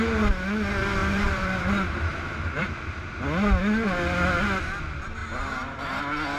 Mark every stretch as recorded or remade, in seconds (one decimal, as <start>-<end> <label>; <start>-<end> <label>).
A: 0.0-1.0 recorded; 1.0-2.8 remade; 2.8-5.2 recorded; 5.2-6.0 remade; 6.0-6.4 recorded